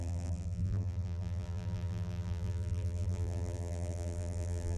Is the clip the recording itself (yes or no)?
no